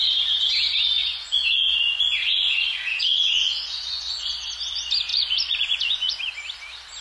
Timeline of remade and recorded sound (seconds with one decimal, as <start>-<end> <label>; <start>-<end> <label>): 0.0-1.0 recorded; 1.0-4.5 remade; 4.5-5.1 recorded; 5.1-6.2 remade; 6.2-7.0 recorded